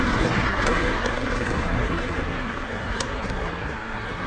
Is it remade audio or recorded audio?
remade